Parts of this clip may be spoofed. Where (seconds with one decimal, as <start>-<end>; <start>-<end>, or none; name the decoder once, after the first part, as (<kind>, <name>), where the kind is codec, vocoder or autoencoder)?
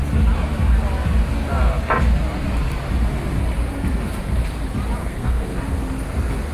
5.0-5.6 (codec, SNAC)